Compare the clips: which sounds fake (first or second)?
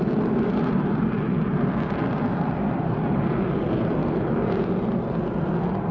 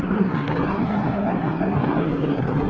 second